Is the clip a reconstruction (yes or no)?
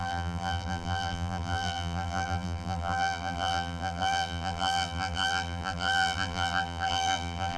yes